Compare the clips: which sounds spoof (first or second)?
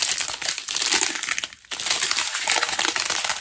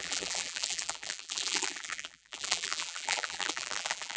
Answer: second